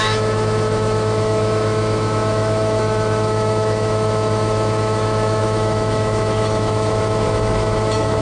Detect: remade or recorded remade